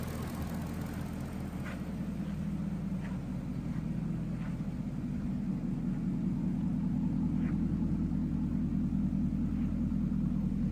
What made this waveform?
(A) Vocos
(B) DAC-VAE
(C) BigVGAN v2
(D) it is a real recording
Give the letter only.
D